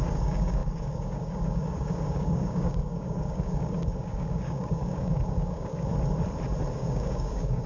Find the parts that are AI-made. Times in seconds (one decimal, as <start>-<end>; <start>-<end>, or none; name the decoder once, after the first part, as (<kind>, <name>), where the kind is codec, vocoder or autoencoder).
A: 0.0-5.9 (codec, DAC); 6.7-7.7